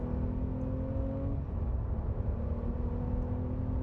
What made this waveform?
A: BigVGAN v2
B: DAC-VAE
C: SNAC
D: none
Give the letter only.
D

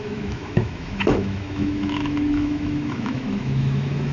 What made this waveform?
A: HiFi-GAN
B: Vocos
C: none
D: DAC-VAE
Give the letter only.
D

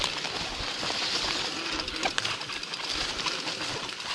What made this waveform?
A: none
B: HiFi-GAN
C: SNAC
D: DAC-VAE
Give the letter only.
A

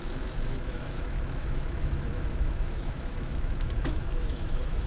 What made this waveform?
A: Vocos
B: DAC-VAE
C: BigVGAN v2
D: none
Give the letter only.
B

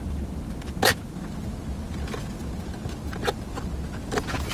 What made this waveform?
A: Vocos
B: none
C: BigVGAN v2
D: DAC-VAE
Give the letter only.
B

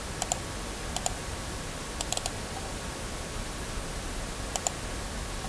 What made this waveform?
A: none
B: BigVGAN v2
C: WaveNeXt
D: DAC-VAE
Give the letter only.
A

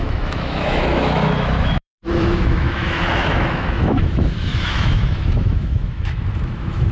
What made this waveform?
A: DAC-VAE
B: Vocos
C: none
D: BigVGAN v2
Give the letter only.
A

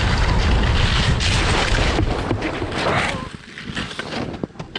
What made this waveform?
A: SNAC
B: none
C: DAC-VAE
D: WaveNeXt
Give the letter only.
B